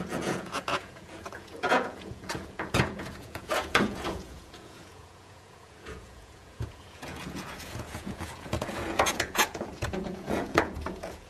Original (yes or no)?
no